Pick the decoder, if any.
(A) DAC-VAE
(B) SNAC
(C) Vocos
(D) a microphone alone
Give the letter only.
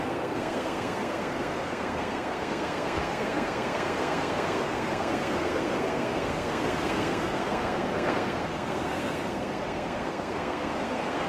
B